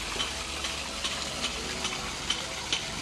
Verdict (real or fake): real